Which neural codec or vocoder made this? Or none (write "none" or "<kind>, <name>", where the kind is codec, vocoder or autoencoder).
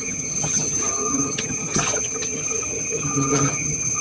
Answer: vocoder, HiFi-GAN